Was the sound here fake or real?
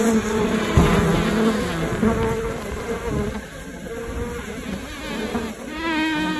real